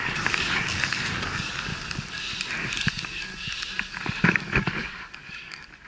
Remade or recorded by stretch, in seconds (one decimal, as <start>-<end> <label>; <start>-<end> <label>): 0.0-1.7 remade; 1.7-2.8 recorded; 2.8-3.3 remade; 3.3-4.2 recorded; 4.2-5.9 remade